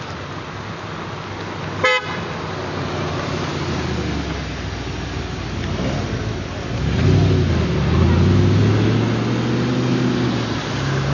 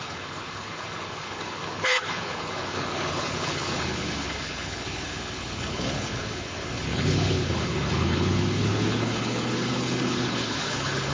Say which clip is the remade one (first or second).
second